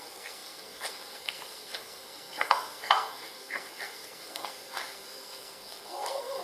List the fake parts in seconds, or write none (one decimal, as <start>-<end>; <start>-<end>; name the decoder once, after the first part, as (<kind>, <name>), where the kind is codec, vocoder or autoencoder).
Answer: 0.0-6.4 (codec, SNAC)